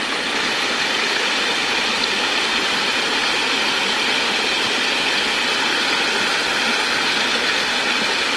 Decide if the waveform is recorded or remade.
recorded